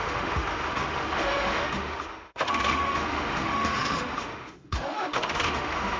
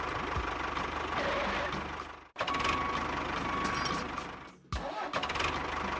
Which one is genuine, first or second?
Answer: second